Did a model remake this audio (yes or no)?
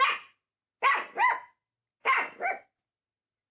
no